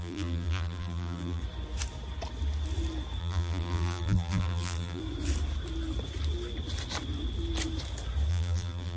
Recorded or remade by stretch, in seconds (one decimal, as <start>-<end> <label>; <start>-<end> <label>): 0.0-1.4 remade; 1.4-3.2 recorded; 3.2-5.0 remade; 5.0-8.3 recorded; 8.3-9.0 remade